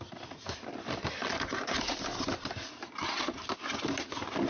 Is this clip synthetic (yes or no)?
no